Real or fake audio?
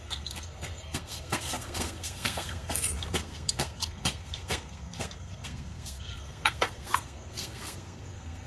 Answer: fake